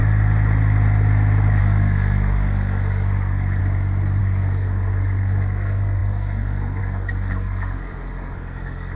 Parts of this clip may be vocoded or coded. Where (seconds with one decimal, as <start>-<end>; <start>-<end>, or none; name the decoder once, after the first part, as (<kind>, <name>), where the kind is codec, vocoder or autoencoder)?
1.6-3.6 (codec, SNAC); 4.2-9.0